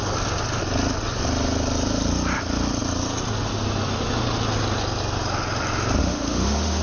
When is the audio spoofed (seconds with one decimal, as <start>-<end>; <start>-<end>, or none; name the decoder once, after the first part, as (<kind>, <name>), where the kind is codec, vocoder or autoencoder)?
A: 6.0-6.8 (autoencoder, DAC-VAE)